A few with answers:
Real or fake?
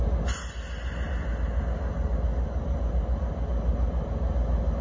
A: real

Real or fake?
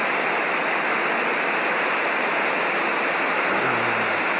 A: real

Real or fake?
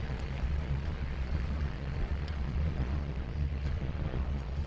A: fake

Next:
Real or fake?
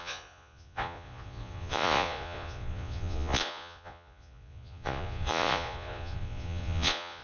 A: fake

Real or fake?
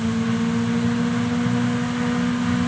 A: real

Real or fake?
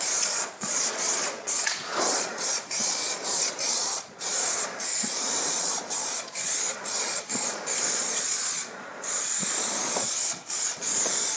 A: fake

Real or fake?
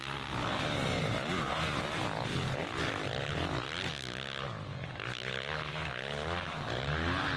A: real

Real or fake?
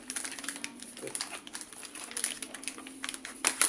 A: real